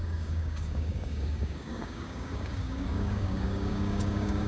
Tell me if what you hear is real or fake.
fake